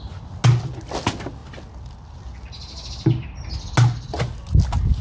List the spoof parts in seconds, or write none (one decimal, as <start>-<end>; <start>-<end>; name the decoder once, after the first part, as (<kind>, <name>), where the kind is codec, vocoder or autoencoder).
none

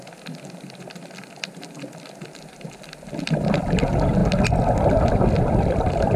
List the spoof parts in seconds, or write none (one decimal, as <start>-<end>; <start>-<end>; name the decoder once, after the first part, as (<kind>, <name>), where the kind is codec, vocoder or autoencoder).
0.0-4.2 (vocoder, BigVGAN v2); 5.1-6.2

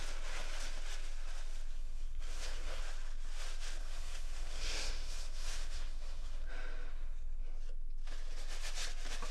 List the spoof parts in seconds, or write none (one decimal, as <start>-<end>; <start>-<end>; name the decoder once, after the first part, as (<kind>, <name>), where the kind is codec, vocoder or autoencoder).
1.7-2.8 (codec, SNAC); 3.8-6.5; 6.9-7.4